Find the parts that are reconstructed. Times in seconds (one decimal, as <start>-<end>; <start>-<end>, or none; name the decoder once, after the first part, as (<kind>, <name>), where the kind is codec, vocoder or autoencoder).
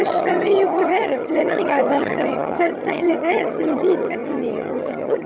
0.0-5.3 (vocoder, HiFi-GAN)